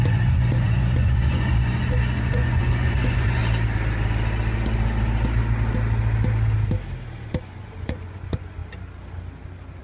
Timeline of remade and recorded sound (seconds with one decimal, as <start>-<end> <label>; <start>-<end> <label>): 0.0-3.4 remade; 3.4-7.4 recorded; 7.4-8.6 remade; 8.6-9.8 recorded